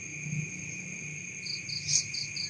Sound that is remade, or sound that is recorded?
recorded